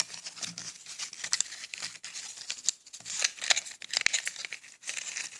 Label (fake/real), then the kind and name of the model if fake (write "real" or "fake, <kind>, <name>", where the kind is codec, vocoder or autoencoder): real